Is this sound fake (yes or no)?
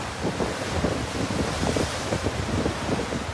no